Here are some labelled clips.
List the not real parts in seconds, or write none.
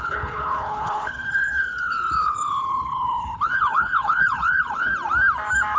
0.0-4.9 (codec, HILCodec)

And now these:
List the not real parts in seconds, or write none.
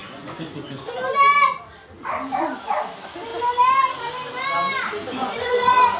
0.0-0.9 (vocoder, Vocos); 5.2-6.0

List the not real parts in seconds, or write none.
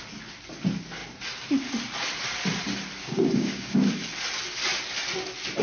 3.0-3.9 (codec, DAC)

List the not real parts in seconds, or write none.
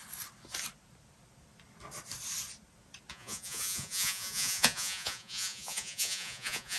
3.1-6.8 (vocoder, Vocos)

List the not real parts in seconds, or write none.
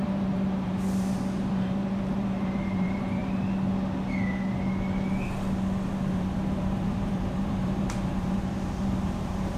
0.0-3.2 (vocoder, BigVGAN v2); 6.1-9.6